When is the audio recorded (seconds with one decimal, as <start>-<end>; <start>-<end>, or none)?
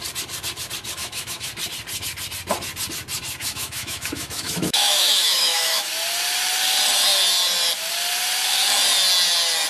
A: 0.0-1.0; 1.5-3.4; 5.9-9.7